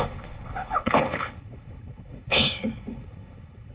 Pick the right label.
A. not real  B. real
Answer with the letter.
A